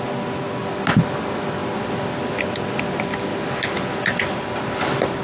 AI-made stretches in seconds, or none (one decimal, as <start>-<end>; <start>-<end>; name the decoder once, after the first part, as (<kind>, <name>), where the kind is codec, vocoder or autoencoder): none